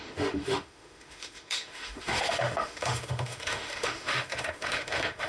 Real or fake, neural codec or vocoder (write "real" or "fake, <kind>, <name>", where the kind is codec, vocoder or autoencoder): fake, autoencoder, DAC-VAE